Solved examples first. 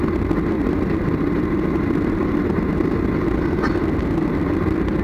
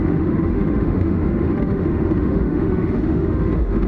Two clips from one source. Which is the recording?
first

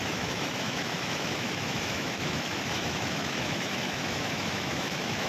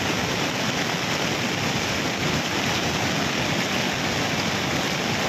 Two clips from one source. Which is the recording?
second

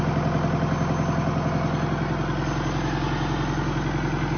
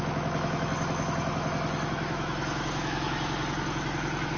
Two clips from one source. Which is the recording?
first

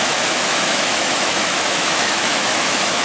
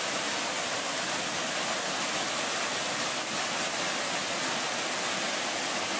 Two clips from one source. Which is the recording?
second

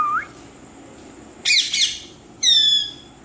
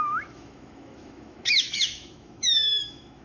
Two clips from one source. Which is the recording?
first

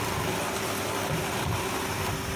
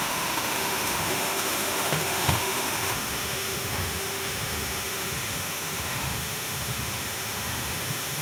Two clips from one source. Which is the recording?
first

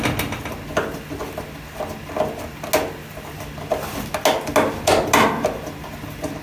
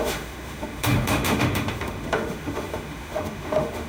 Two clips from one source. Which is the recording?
first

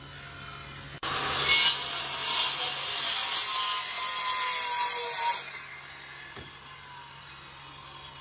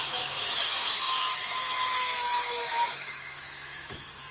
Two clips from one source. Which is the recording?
first